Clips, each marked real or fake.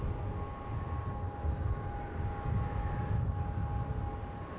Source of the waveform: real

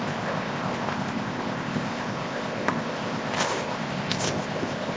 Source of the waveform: fake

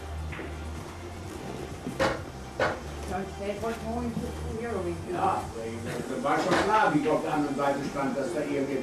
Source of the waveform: real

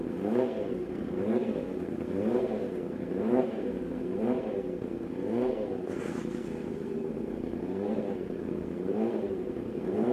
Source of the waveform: fake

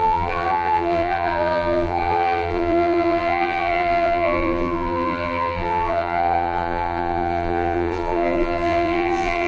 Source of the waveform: fake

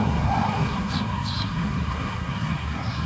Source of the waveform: fake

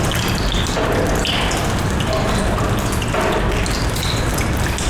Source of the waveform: real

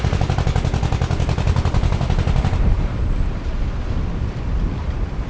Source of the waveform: real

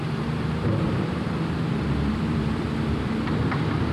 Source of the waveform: fake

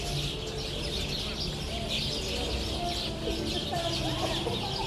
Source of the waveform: real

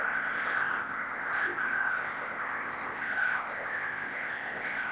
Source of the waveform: fake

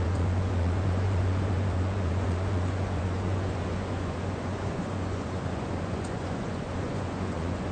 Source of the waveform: fake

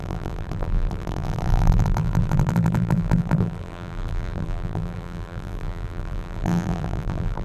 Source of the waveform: fake